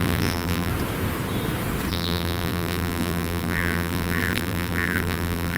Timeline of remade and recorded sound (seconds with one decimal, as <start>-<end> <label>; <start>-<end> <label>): 0.0-0.7 remade; 0.7-1.9 recorded; 1.9-5.6 remade